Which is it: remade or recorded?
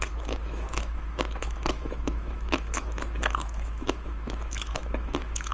remade